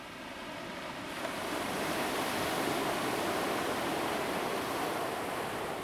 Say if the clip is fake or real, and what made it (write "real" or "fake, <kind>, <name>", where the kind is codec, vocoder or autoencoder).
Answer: real